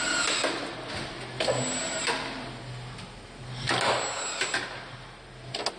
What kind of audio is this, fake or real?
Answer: real